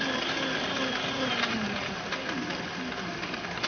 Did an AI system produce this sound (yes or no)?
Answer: no